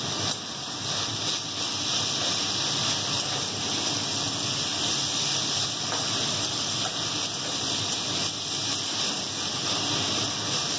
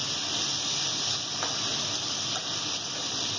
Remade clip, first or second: second